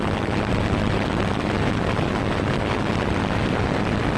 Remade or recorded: recorded